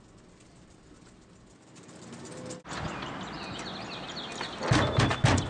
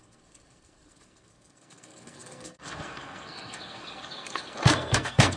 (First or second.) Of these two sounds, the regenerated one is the second